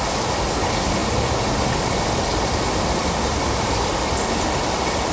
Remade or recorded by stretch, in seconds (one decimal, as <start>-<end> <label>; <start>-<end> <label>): 0.0-3.0 recorded; 3.0-3.9 remade; 3.9-5.1 recorded